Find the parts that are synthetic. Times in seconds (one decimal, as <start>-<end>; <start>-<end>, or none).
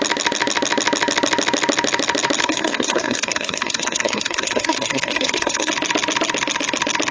2.4-5.7